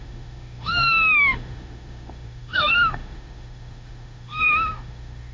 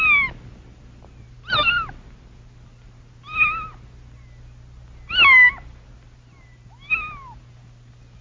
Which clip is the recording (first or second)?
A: second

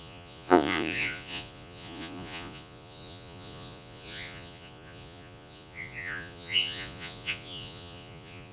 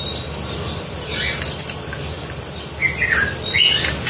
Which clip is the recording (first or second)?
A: second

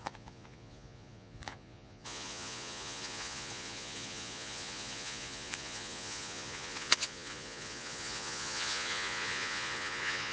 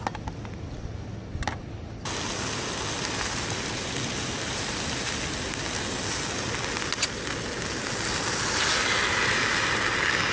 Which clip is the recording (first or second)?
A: second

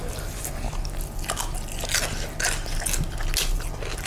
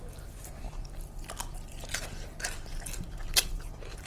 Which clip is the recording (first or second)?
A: first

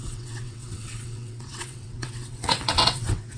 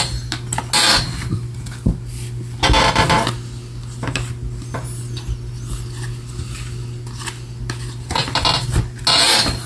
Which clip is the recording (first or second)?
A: second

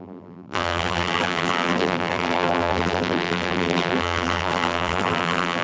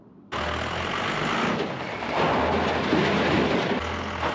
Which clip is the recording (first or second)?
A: second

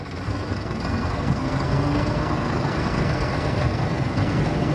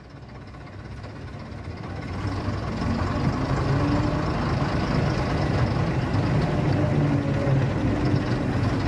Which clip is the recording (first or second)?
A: second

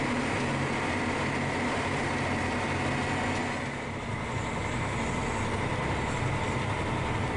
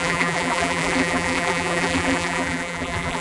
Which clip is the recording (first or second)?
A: first